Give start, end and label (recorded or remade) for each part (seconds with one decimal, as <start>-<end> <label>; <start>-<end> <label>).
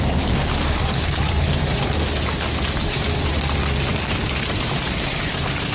0.0-0.8 recorded; 0.8-1.8 remade; 1.8-5.7 recorded